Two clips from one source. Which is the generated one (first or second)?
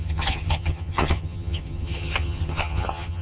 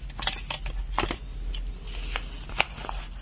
first